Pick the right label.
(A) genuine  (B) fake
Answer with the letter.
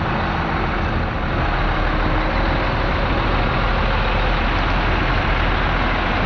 A